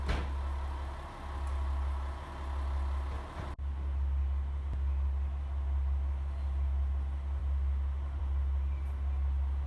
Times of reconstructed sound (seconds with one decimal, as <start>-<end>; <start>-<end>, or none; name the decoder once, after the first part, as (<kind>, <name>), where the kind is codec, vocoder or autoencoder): none